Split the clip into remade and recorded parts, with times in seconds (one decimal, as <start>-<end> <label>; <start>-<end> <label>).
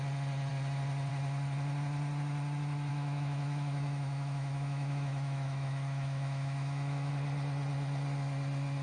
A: 0.0-2.9 recorded; 2.9-7.1 remade; 7.1-8.8 recorded